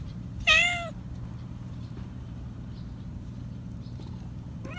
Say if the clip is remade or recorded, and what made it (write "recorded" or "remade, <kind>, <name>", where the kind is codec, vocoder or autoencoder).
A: remade, vocoder, BigVGAN v2